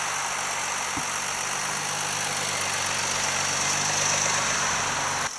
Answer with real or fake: real